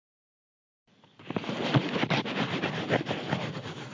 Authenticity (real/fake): fake